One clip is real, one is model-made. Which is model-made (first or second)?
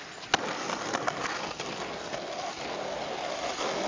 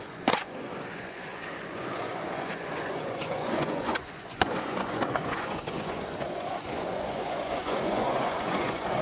second